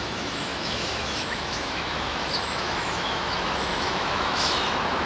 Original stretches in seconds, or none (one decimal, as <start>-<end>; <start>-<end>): none